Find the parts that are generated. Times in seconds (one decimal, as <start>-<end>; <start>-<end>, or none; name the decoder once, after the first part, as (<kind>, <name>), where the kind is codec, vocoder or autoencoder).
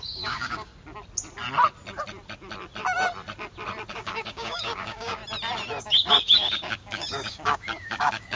0.0-0.7 (codec, DAC); 3.9-5.2; 5.8-8.4